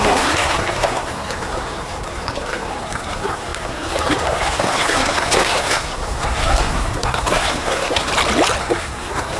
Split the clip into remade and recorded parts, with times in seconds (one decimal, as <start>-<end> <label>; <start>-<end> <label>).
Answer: 0.0-8.1 remade; 8.1-8.6 recorded; 8.6-9.4 remade